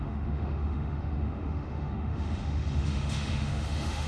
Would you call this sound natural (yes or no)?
no